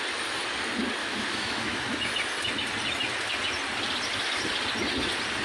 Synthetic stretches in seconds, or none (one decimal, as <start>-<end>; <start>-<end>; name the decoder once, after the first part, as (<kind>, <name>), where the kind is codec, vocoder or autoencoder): 1.0-2.0 (autoencoder, DAC-VAE)